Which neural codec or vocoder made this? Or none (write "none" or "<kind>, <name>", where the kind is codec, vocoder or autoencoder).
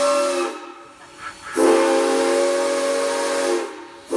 none